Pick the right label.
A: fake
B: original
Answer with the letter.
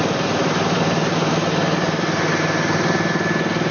B